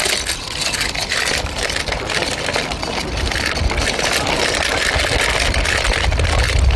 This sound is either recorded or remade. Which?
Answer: recorded